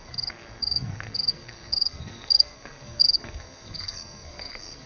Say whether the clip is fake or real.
fake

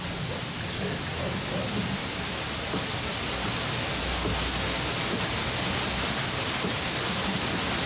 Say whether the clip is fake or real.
real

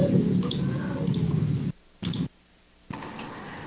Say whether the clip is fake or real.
real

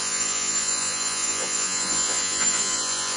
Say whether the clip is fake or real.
fake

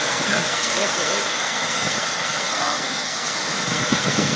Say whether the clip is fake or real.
fake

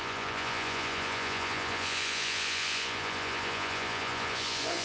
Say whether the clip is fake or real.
fake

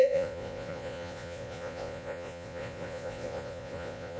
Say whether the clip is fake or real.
fake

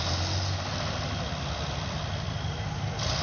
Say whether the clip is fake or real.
real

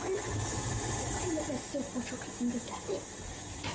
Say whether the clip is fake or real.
real